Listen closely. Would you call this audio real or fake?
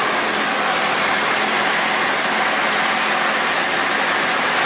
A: real